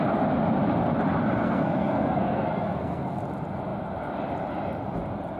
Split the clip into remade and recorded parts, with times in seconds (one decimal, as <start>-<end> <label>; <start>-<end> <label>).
0.0-1.4 recorded; 1.4-3.2 remade; 3.2-5.4 recorded